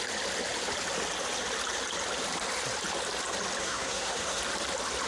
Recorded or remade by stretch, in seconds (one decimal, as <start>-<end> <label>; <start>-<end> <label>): 0.0-3.6 recorded; 3.6-4.4 remade; 4.4-5.1 recorded